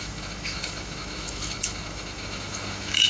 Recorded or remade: remade